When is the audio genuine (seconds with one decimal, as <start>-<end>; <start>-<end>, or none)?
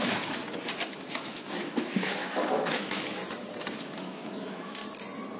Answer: 0.4-0.9; 3.2-3.8; 4.8-5.4